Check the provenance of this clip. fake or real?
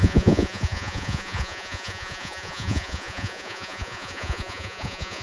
fake